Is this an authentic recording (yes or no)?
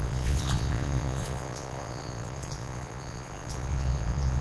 no